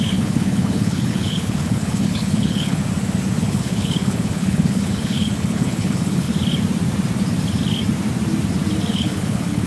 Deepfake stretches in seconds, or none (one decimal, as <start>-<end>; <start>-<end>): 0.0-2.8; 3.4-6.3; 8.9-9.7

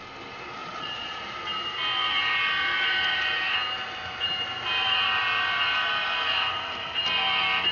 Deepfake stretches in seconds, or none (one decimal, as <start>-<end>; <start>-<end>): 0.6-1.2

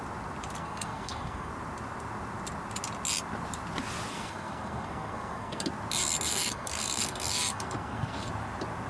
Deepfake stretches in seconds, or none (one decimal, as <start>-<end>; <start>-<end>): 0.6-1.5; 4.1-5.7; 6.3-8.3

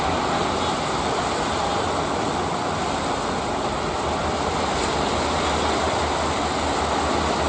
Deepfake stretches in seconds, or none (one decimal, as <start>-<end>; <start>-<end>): none